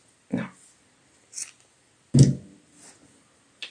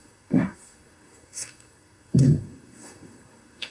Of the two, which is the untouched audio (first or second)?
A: first